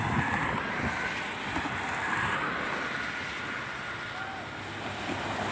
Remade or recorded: recorded